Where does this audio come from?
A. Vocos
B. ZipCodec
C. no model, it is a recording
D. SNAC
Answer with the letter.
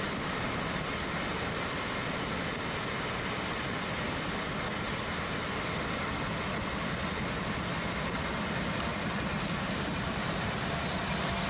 C